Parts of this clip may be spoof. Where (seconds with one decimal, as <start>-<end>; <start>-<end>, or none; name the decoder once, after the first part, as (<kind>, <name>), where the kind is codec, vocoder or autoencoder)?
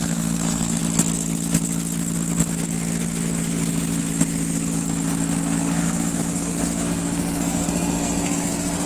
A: 0.0-0.8 (codec, SNAC); 5.4-8.9